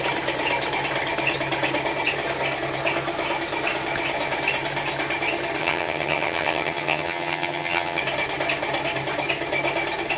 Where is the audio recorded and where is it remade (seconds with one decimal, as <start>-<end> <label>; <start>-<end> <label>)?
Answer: 0.0-5.6 recorded; 5.6-8.0 remade; 8.0-10.2 recorded